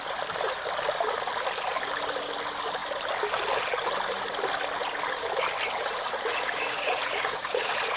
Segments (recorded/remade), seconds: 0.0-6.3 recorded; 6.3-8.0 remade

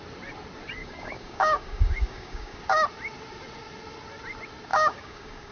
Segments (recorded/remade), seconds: 0.0-0.8 recorded; 0.8-2.6 remade; 2.6-4.7 recorded; 4.7-5.5 remade

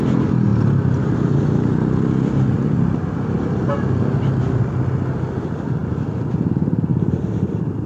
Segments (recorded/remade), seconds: 0.0-7.9 recorded

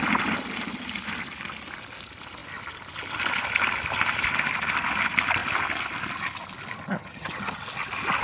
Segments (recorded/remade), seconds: 0.0-7.0 recorded; 7.0-7.6 remade; 7.6-8.2 recorded

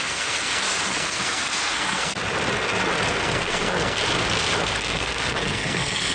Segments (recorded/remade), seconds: 0.0-2.2 remade; 2.2-3.1 recorded; 3.1-4.0 remade; 4.0-4.6 recorded; 4.6-6.1 remade